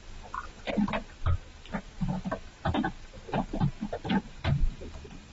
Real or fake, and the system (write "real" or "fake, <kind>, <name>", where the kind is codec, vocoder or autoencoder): real